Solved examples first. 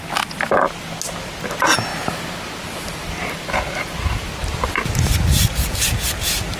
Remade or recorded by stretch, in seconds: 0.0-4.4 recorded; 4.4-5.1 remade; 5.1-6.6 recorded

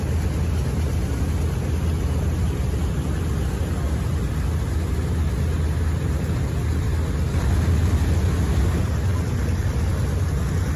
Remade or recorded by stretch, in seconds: 0.0-9.1 recorded; 9.1-9.8 remade; 9.8-10.8 recorded

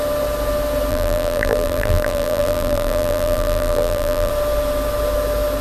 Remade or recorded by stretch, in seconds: 0.0-0.9 recorded; 0.9-4.3 remade; 4.3-5.6 recorded

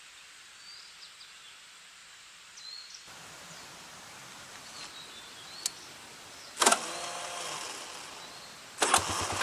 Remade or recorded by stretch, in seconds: 0.0-9.4 recorded

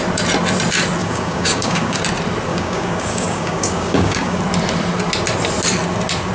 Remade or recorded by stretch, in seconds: 0.0-1.0 recorded; 1.0-2.0 remade; 2.0-2.5 recorded; 2.5-4.4 remade; 4.4-6.3 recorded

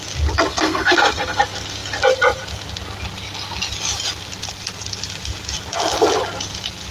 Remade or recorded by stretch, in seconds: 0.0-0.5 recorded; 0.5-1.4 remade; 1.4-6.9 recorded

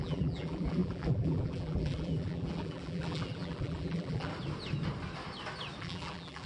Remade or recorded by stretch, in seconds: 0.0-4.3 remade; 4.3-5.8 recorded; 5.8-6.5 remade

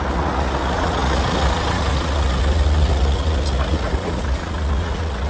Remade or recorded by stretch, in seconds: 0.0-5.3 remade